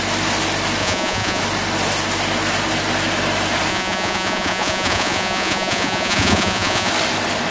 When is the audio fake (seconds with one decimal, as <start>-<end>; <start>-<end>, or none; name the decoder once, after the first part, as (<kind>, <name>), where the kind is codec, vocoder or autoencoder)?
0.8-1.4 (vocoder, Vocos); 3.7-6.9